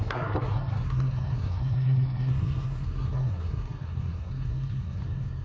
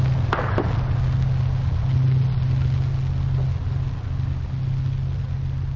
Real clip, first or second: second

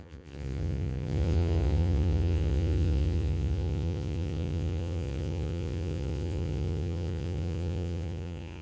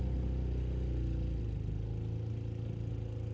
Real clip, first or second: second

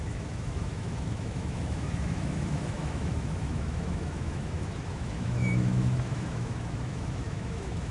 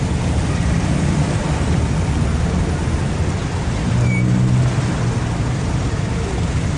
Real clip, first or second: second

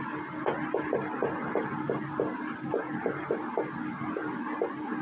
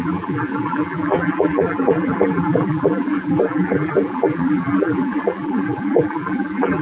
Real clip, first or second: first